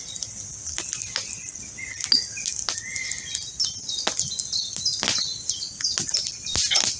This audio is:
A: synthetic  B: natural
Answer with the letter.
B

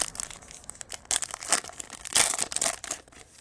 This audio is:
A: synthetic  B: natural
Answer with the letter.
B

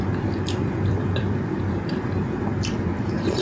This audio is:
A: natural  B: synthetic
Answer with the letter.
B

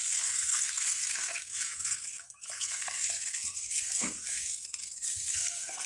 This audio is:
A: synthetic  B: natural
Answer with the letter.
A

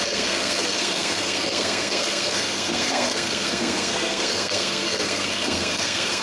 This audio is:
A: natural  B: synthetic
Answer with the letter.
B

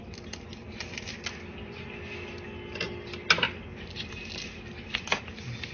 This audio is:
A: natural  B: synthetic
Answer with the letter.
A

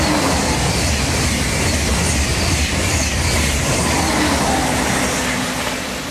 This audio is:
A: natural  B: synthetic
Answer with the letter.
A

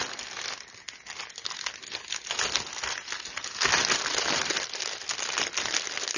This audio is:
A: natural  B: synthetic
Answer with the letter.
A